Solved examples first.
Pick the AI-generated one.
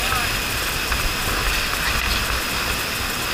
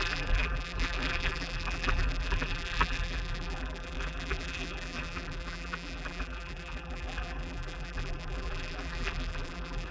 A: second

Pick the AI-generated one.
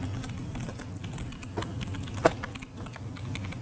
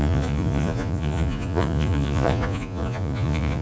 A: second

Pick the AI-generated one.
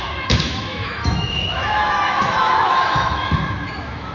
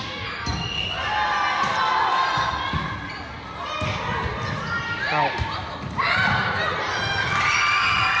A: first